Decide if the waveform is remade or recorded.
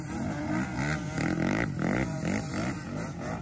recorded